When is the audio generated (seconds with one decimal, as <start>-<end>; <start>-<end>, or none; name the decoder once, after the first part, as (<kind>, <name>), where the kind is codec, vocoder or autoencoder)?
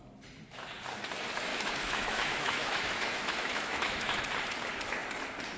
1.5-4.2 (autoencoder, DAC-VAE)